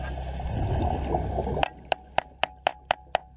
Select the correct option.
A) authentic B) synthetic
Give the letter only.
A